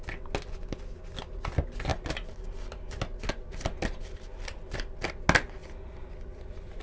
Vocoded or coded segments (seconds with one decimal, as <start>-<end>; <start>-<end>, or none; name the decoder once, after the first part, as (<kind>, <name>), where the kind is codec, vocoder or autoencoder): none